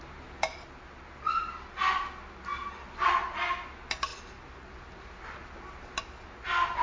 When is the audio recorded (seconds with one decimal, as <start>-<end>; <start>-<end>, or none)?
0.0-6.8